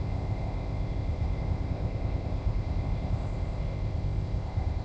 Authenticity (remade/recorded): remade